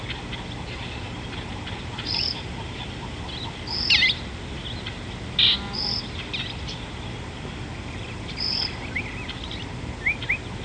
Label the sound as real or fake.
real